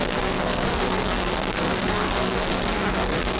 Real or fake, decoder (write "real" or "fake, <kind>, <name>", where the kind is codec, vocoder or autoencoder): fake, codec, SNAC